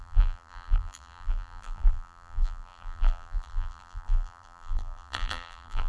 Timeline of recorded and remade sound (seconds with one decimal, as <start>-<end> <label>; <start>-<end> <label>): 0.0-5.9 remade